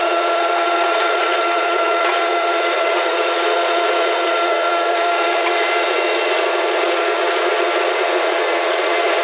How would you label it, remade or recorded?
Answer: remade